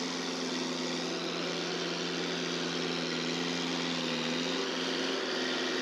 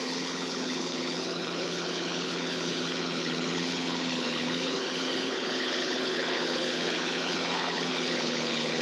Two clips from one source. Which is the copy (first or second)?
second